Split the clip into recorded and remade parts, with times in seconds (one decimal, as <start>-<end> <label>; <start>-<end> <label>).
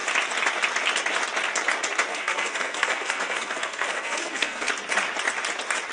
0.0-2.1 recorded; 2.1-4.7 remade; 4.7-5.9 recorded